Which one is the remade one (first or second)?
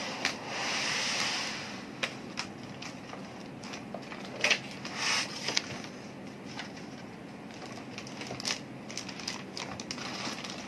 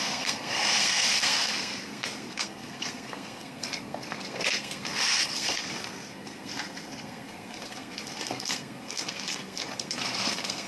second